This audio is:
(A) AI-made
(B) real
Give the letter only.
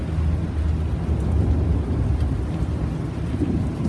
B